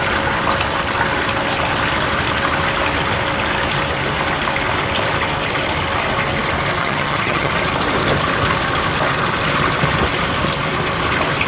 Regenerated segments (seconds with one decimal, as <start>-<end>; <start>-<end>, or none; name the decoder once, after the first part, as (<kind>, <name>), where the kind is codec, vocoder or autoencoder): 6.8-7.5 (vocoder, HiFi-GAN)